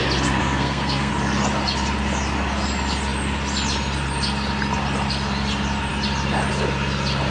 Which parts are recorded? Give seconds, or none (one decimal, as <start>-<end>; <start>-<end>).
0.0-0.4; 1.1-7.3